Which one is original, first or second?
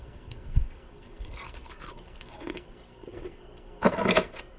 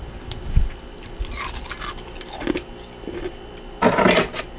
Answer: second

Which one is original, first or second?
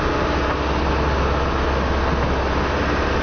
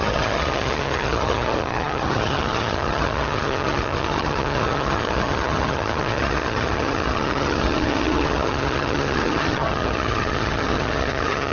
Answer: first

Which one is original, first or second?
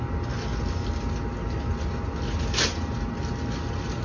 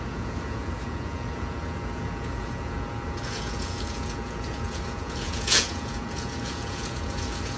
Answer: first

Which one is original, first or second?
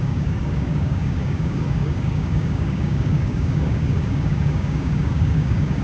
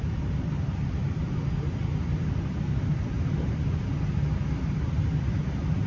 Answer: second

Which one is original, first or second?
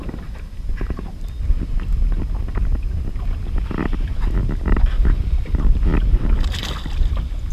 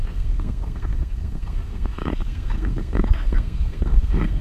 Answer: first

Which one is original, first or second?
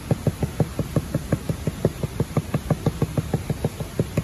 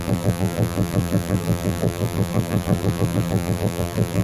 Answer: first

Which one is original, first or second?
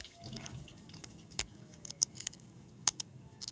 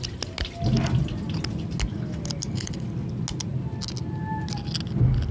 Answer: second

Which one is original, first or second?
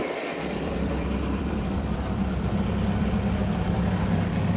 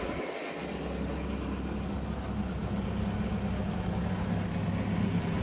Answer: second